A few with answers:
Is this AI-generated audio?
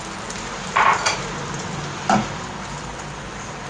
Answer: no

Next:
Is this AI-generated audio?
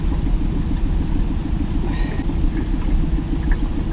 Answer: no